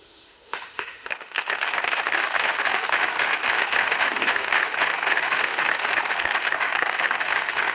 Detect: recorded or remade remade